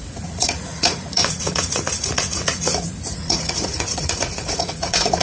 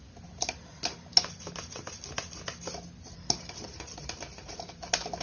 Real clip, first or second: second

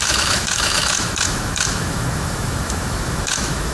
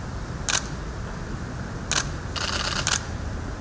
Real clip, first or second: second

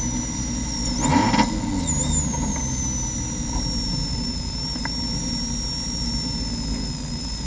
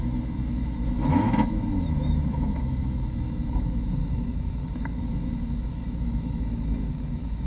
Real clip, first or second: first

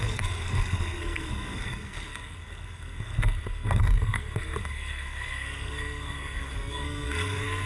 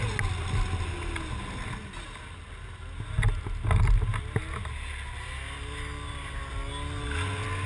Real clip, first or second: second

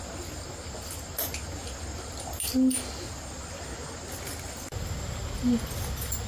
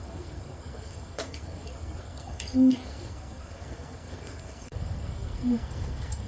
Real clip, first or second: first